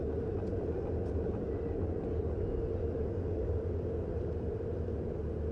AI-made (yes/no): no